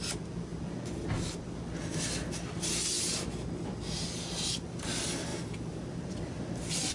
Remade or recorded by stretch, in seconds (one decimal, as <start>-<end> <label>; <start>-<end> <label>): 0.0-5.3 recorded; 5.3-6.9 remade